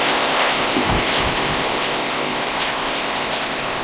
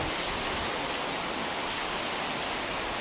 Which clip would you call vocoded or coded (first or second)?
first